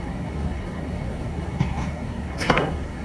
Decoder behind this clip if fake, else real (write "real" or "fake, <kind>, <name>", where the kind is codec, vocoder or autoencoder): fake, codec, SNAC